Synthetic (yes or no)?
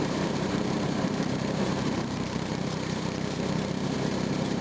yes